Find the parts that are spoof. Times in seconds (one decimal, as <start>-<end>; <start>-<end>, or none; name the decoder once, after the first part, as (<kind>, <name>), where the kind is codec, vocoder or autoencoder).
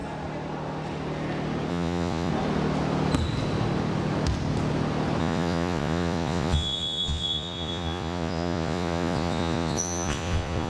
1.7-2.3 (vocoder, Vocos); 5.2-10.7